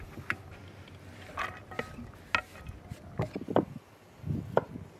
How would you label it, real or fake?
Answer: real